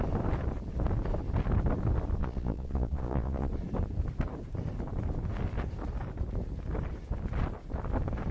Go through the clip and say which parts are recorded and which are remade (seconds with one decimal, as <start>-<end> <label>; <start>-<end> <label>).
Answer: 0.0-2.2 recorded; 2.2-3.5 remade; 3.5-8.3 recorded